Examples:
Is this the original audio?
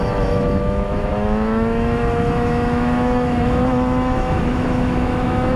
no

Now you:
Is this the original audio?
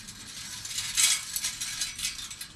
yes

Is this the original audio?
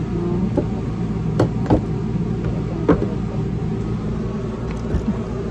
yes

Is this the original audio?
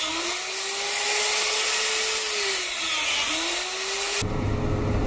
yes